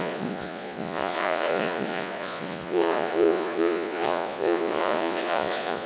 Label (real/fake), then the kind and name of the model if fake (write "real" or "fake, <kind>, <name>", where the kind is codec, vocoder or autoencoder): fake, vocoder, Vocos